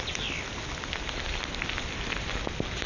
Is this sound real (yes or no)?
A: yes